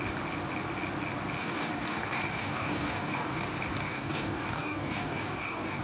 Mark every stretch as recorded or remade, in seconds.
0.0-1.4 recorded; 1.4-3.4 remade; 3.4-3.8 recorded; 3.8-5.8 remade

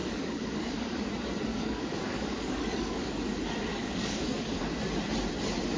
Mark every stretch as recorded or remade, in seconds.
0.0-1.1 remade; 1.1-1.5 recorded; 1.5-3.2 remade; 3.2-3.7 recorded; 3.7-4.6 remade; 4.6-5.8 recorded

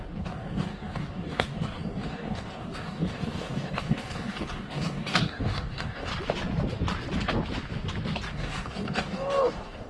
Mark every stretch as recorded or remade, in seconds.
0.0-6.1 remade; 6.1-8.3 recorded; 8.3-9.9 remade

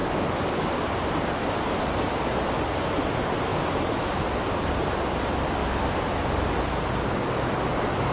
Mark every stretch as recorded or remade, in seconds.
0.0-8.1 recorded

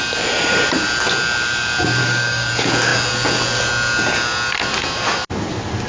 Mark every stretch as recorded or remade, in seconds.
0.0-2.0 recorded; 2.0-2.5 remade; 2.5-5.9 recorded

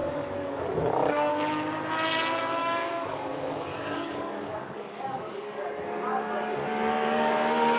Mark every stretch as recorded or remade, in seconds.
0.0-1.3 remade; 1.3-2.6 recorded; 2.6-7.3 remade; 7.3-7.8 recorded

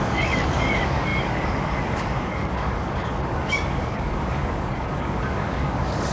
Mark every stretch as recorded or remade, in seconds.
0.0-6.1 remade